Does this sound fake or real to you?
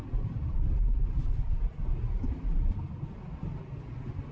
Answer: real